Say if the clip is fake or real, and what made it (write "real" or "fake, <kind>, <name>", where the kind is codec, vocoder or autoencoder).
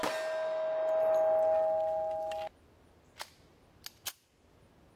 real